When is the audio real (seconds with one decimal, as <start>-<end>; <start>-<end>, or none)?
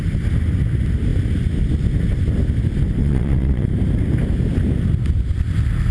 0.0-3.0; 3.7-5.9